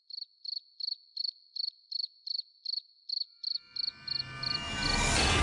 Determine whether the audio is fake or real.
real